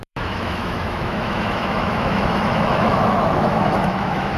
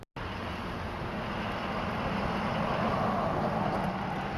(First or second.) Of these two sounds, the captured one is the second